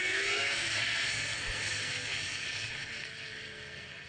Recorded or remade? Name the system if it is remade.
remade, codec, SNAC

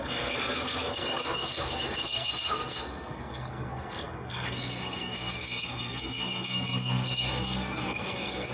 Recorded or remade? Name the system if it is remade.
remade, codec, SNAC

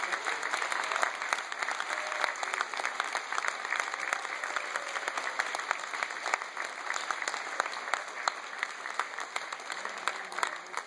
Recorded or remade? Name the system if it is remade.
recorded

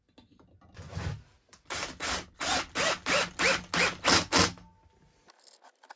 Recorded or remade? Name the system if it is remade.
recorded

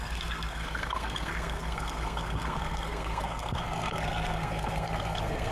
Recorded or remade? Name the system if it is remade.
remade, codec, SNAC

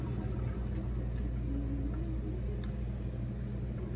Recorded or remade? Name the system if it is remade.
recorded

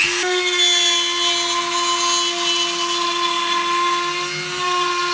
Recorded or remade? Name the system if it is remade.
recorded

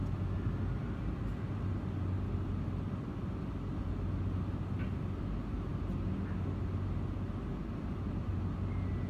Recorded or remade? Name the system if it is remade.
recorded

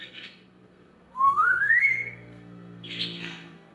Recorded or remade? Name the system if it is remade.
remade, codec, SNAC